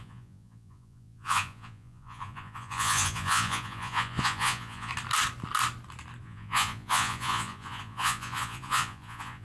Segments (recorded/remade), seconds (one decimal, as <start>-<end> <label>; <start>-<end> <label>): 0.0-4.9 remade; 4.9-6.2 recorded; 6.2-9.4 remade